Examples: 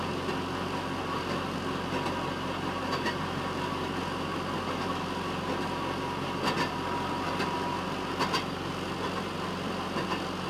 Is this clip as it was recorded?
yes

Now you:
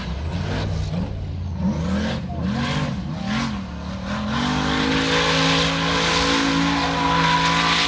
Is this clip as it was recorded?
yes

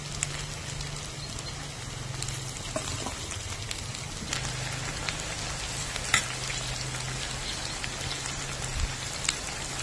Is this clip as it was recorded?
yes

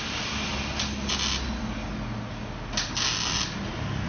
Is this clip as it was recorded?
yes